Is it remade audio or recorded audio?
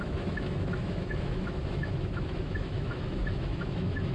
remade